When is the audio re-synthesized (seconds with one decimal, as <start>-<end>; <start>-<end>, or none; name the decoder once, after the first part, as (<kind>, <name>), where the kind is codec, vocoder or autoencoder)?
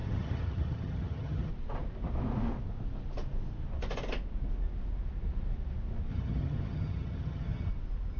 0.0-1.5 (vocoder, HiFi-GAN); 6.1-7.7